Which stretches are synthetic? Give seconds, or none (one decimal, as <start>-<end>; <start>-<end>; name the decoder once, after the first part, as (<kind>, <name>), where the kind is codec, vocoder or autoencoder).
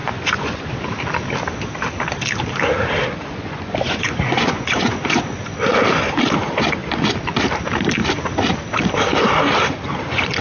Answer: 0.0-0.7 (vocoder, Vocos); 3.3-5.7